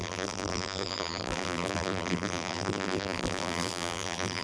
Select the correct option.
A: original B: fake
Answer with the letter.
B